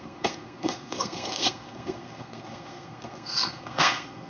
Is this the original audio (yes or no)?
no